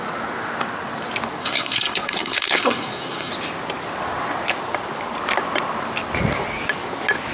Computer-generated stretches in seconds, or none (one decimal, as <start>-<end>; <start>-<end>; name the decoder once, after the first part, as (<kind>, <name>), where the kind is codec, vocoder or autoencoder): 1.4-3.3 (codec, SNAC)